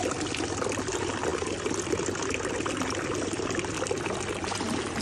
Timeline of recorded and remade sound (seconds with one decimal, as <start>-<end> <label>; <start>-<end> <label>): 0.0-5.0 recorded